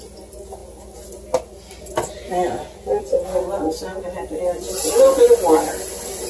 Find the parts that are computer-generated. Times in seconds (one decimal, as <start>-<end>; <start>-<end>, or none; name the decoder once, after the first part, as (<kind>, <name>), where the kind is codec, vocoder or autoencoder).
none